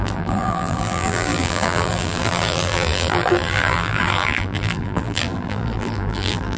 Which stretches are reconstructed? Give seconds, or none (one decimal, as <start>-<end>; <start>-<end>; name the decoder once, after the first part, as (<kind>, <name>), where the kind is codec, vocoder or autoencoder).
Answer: 0.0-6.6 (vocoder, BigVGAN v2)